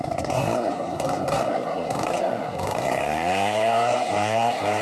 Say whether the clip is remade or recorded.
remade